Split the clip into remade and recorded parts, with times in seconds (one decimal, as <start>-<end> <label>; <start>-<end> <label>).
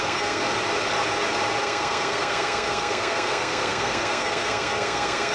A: 0.0-0.4 remade; 0.4-1.6 recorded; 1.6-5.3 remade